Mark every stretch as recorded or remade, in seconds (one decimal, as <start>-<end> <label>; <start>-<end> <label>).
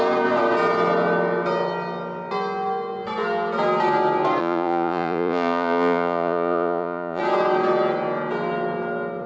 0.0-4.4 recorded; 4.4-7.2 remade; 7.2-9.3 recorded